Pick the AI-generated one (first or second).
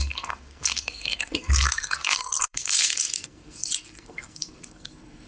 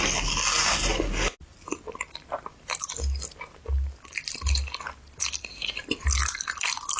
first